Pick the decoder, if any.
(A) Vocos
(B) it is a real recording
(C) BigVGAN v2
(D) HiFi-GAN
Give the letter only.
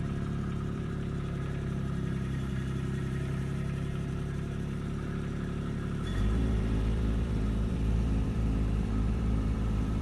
C